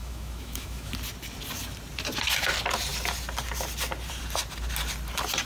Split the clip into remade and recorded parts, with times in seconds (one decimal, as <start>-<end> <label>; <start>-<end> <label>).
0.0-0.9 remade; 0.9-5.4 recorded